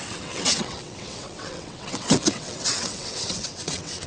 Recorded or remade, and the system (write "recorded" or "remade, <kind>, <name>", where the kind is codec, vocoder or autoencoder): remade, vocoder, WaveNeXt